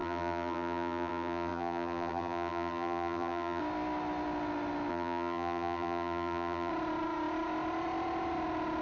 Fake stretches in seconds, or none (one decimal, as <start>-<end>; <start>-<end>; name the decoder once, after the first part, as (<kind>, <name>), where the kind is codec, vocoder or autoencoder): 0.0-3.6 (vocoder, BigVGAN v2); 4.9-6.7